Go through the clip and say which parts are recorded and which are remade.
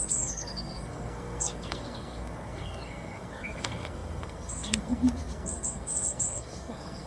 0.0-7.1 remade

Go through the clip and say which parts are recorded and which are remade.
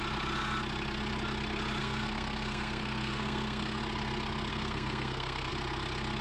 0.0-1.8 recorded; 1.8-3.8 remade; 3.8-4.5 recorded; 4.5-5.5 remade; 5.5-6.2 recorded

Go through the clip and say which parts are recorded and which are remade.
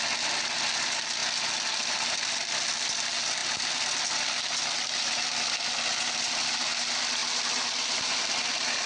0.0-8.9 recorded